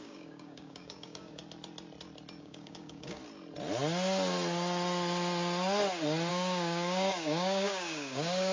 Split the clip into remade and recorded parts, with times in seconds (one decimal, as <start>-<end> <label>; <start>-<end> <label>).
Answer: 0.0-1.4 remade; 1.4-2.4 recorded; 2.4-3.2 remade; 3.2-6.3 recorded; 6.3-8.5 remade